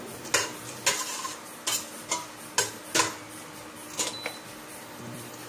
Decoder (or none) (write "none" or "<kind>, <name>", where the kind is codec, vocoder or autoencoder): none